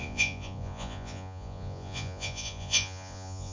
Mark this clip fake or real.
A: fake